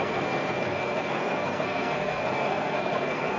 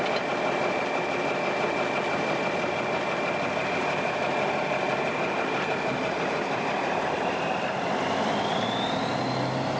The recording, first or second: second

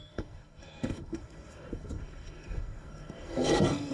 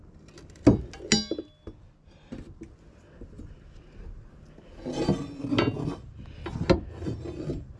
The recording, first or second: second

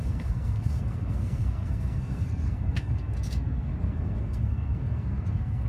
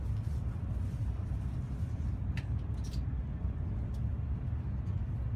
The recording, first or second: second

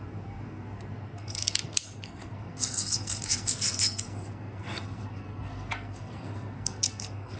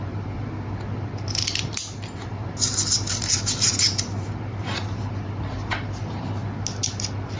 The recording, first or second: second